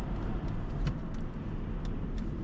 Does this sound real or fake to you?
fake